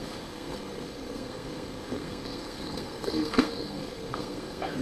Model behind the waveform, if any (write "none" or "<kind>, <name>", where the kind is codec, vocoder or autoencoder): codec, SNAC